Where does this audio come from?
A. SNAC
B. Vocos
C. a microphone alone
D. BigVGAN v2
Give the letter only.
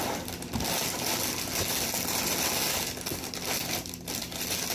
C